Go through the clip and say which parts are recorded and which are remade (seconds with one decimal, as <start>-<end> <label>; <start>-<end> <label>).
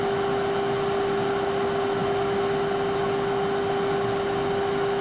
0.0-5.0 recorded